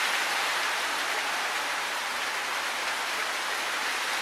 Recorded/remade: recorded